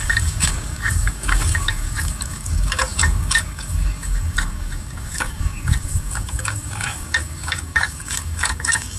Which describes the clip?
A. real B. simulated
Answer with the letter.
B